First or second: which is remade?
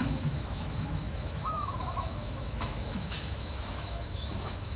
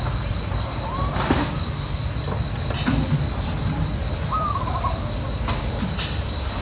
first